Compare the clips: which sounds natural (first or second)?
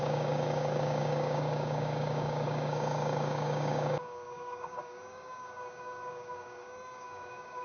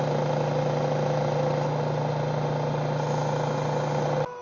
second